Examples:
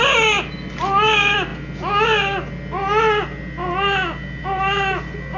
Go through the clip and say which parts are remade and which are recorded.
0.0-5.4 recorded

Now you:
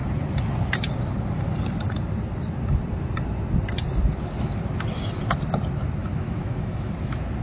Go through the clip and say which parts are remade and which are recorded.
0.0-6.0 recorded; 6.0-6.9 remade; 6.9-7.4 recorded